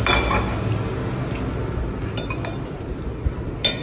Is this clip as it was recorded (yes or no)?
yes